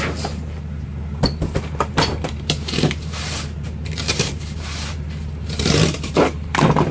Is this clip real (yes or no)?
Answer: no